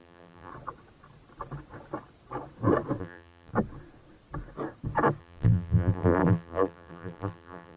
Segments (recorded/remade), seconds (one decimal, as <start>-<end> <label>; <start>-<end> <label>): 0.0-0.5 remade; 0.5-3.0 recorded; 3.0-3.5 remade; 3.5-5.2 recorded; 5.2-7.8 remade